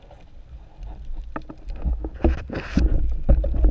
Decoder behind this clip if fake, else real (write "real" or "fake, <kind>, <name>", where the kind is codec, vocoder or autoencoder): real